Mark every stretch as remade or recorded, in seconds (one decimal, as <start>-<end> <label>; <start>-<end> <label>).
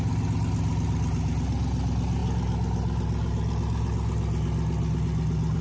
0.0-5.6 recorded